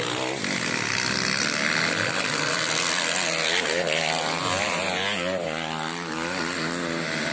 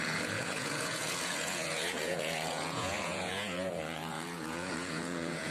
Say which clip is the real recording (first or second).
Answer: first